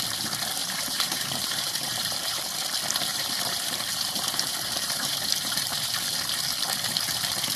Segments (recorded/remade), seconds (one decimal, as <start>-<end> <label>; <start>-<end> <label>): 0.0-0.6 recorded; 0.6-2.4 remade; 2.4-3.1 recorded; 3.1-6.0 remade; 6.0-7.6 recorded